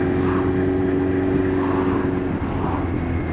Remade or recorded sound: recorded